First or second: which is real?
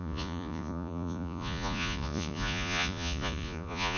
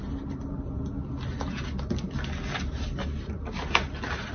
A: second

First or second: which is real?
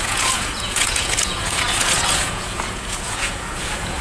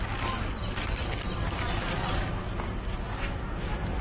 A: second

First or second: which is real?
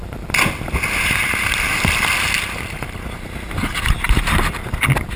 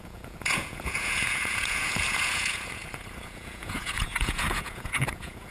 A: first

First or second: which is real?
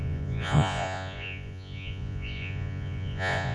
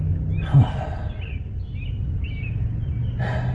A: second